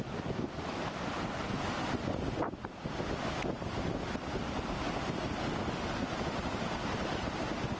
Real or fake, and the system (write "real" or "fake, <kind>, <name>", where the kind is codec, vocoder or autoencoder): real